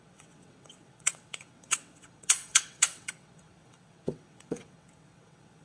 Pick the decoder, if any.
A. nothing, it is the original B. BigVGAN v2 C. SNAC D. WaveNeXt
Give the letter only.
D